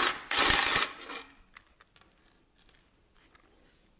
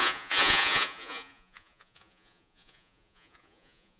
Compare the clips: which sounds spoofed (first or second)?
second